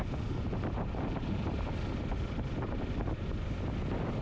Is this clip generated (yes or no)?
no